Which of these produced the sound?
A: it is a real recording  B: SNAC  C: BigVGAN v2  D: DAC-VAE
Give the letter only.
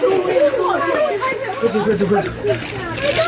A